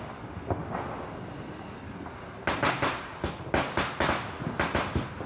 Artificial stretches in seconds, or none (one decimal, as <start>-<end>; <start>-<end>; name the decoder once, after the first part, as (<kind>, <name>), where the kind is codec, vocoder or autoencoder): none